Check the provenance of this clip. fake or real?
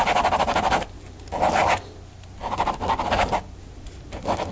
real